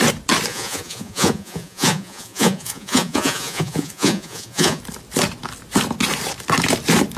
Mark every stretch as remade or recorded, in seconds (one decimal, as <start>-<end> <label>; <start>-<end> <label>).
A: 0.0-0.5 recorded; 0.5-4.8 remade; 4.8-7.2 recorded